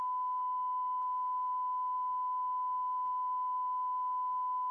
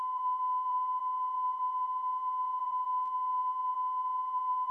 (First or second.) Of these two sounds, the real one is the first